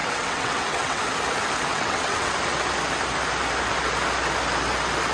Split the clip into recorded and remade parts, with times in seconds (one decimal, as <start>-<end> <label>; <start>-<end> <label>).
0.0-1.0 remade; 1.0-1.7 recorded; 1.7-2.3 remade; 2.3-5.1 recorded